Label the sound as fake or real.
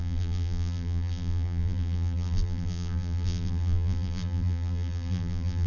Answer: fake